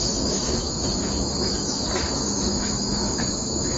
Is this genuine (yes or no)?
no